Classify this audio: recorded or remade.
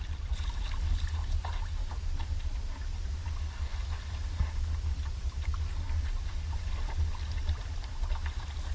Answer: recorded